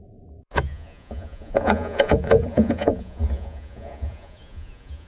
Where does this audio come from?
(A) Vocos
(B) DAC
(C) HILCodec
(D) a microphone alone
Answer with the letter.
A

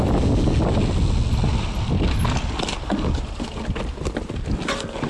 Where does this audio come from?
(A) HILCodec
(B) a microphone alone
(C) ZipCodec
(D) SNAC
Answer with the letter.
B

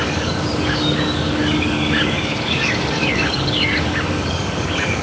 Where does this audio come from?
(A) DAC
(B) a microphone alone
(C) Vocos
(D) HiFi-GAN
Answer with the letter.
A